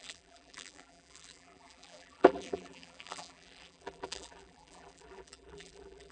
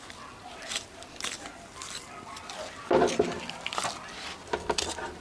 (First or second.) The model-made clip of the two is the first